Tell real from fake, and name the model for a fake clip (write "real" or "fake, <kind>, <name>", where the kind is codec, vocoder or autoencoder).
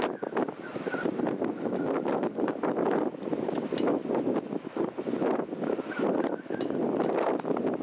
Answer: real